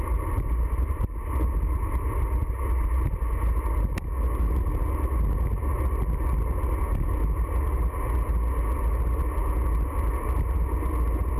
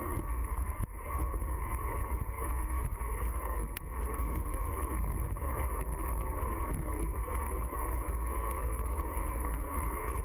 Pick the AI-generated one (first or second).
second